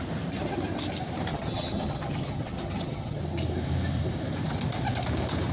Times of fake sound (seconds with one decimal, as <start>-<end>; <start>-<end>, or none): 1.3-3.2